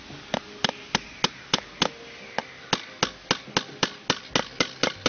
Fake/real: real